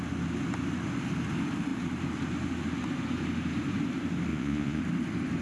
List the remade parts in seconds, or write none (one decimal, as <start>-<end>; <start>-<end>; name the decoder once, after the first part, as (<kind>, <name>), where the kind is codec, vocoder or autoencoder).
4.3-4.8 (vocoder, Vocos)